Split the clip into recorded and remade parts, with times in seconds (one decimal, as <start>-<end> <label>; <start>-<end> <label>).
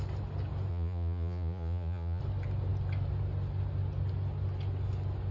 0.0-0.7 recorded; 0.7-2.2 remade; 2.2-5.3 recorded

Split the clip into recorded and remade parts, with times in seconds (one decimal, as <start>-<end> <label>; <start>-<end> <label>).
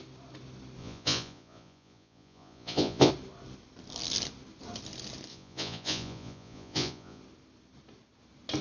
0.0-0.8 recorded; 0.8-3.1 remade; 3.1-5.3 recorded; 5.3-7.2 remade; 7.2-8.6 recorded